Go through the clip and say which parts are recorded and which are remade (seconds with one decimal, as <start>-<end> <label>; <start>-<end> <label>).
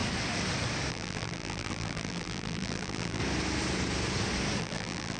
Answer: 0.0-0.9 recorded; 0.9-3.2 remade; 3.2-4.6 recorded; 4.6-5.2 remade